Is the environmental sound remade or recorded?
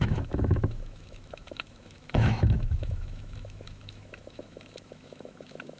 remade